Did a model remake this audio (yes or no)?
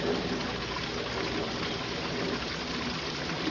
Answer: no